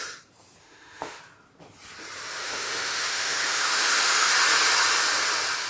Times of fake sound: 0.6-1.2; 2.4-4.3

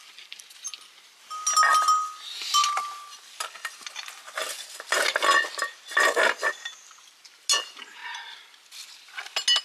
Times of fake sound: none

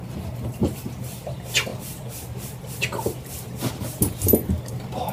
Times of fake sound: none

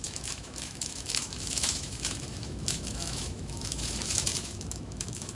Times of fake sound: 0.0-5.3